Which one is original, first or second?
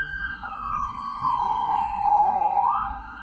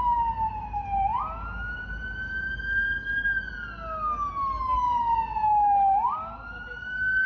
second